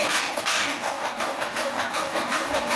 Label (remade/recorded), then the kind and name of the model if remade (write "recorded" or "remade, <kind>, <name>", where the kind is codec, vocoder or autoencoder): remade, codec, DAC